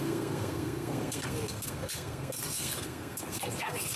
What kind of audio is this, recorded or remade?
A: remade